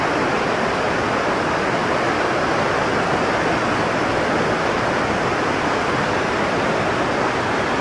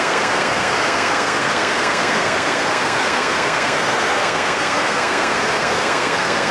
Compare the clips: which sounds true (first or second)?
first